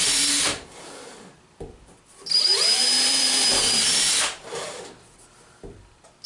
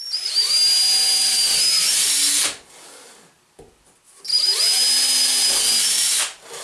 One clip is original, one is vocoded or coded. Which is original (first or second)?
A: second